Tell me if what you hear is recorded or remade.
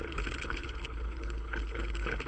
remade